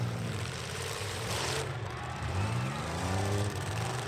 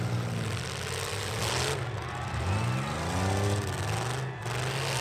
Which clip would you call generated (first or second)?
first